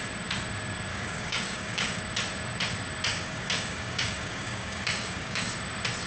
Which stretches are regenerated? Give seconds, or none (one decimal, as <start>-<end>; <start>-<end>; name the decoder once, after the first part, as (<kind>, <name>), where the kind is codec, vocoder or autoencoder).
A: 0.9-2.0 (codec, DAC); 3.1-5.5